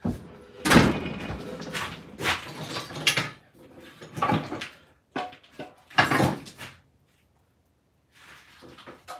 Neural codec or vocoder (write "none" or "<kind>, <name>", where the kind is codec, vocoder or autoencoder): none